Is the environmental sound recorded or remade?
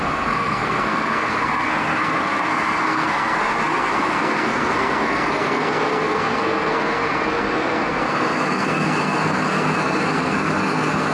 remade